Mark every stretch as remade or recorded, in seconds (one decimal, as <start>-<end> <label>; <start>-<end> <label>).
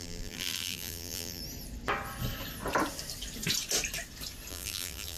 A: 0.0-1.4 remade; 1.4-4.5 recorded; 4.5-5.2 remade